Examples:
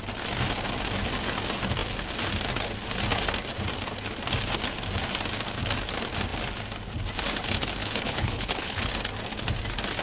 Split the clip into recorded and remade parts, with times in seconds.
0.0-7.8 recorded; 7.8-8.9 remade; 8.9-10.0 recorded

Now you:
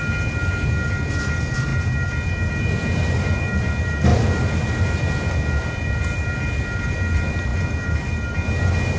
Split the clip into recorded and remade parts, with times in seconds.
0.0-9.0 recorded

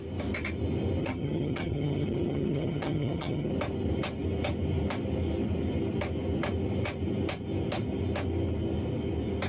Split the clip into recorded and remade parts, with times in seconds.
0.0-1.0 recorded; 1.0-3.5 remade; 3.5-9.5 recorded

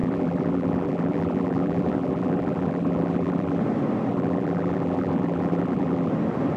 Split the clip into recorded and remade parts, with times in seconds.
0.0-3.6 remade; 3.6-4.1 recorded; 4.1-6.1 remade; 6.1-6.6 recorded

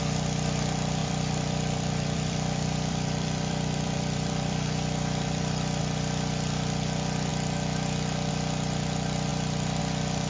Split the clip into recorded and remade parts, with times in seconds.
0.0-1.0 recorded; 1.0-5.8 remade; 5.8-10.3 recorded

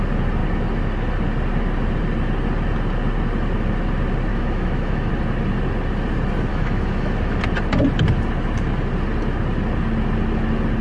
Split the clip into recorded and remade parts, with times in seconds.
0.0-4.3 recorded; 4.3-5.1 remade; 5.1-6.5 recorded; 6.5-7.4 remade; 7.4-10.8 recorded